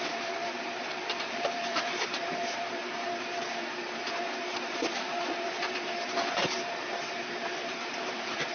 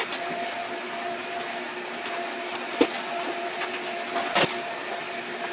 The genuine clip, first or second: second